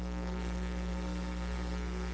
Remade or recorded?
remade